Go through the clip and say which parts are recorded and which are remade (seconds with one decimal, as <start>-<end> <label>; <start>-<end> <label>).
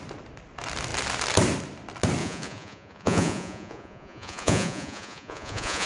0.0-2.2 recorded; 2.2-5.9 remade